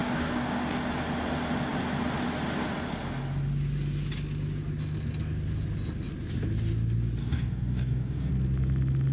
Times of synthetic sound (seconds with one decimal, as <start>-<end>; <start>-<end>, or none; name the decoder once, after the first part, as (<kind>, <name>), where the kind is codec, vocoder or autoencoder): 0.0-0.8 (codec, DAC); 7.2-8.3